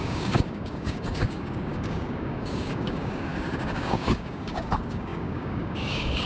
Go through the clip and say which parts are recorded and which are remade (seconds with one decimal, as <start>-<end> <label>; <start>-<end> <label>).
0.0-6.3 remade